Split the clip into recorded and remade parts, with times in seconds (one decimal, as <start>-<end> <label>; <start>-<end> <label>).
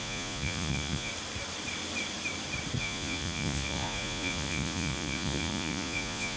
0.0-1.1 remade; 1.1-2.8 recorded; 2.8-6.4 remade